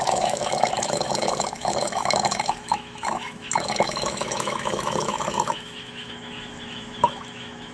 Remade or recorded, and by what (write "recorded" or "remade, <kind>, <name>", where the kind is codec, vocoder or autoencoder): remade, autoencoder, DAC-VAE